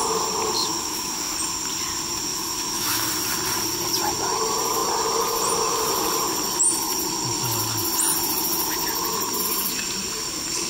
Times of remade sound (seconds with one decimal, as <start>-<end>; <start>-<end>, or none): 0.6-1.3; 2.3-3.1